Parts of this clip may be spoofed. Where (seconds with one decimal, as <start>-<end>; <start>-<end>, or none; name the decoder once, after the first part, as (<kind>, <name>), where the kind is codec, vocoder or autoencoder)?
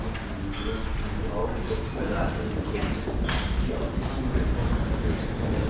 1.4-3.7 (vocoder, BigVGAN v2)